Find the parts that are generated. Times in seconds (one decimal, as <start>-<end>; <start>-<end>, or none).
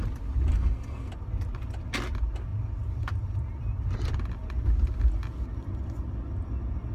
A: 0.5-1.1